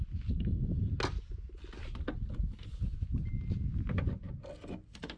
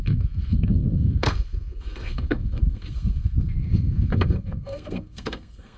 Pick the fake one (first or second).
second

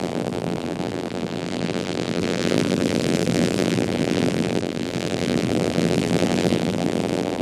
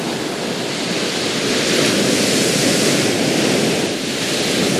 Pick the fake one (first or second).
first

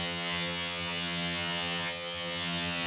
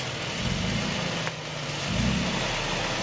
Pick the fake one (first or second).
first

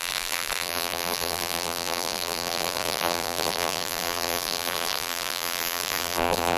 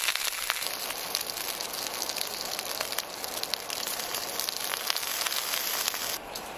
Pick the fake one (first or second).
first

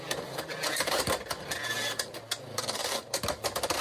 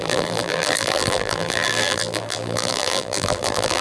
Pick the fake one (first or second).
second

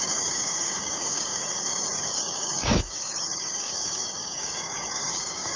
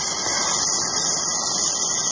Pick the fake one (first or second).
first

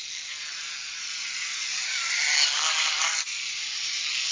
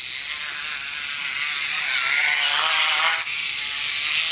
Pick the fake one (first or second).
first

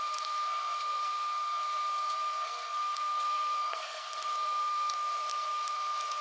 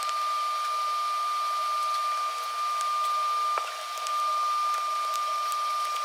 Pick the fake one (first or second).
first